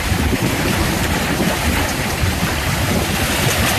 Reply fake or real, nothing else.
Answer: fake